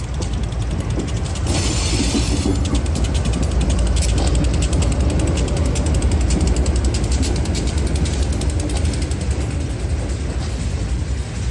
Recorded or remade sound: recorded